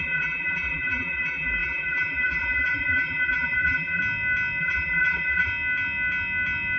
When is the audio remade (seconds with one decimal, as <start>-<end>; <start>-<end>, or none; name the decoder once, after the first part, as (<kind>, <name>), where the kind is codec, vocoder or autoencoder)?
0.0-4.0 (vocoder, BigVGAN v2); 4.6-5.5